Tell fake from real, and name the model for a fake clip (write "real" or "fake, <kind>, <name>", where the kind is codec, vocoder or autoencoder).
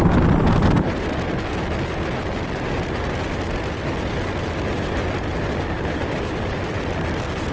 real